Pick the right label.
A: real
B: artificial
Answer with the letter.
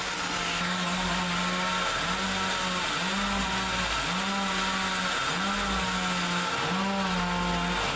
A